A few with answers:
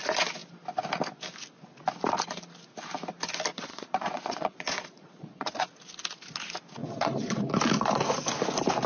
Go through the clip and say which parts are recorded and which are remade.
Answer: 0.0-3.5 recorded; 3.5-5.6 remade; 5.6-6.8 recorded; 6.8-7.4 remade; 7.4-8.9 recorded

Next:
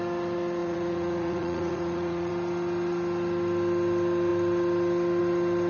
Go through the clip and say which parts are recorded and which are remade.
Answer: 0.0-0.6 recorded; 0.6-2.3 remade; 2.3-5.7 recorded